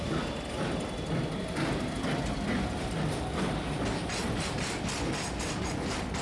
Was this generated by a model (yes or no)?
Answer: no